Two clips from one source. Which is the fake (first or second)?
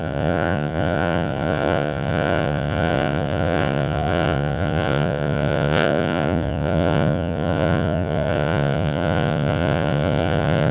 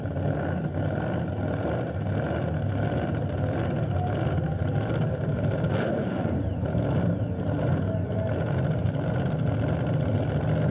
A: first